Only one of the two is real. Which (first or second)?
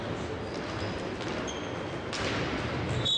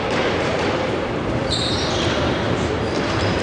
first